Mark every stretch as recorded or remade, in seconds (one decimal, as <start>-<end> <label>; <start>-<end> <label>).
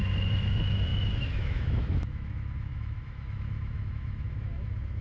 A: 0.0-5.0 remade